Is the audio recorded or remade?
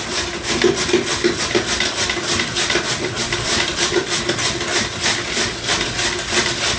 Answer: recorded